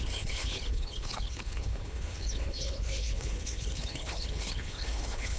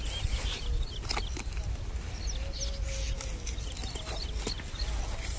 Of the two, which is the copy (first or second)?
first